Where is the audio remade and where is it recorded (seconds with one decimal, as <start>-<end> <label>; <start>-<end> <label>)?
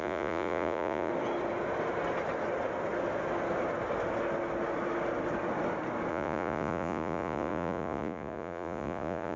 0.0-1.1 remade; 1.1-6.1 recorded; 6.1-9.4 remade